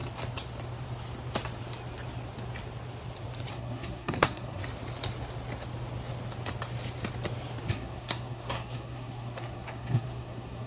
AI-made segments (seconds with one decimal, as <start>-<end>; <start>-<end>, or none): 3.5-4.6; 7.7-10.7